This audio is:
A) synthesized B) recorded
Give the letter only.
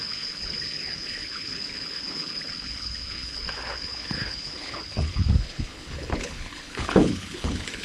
A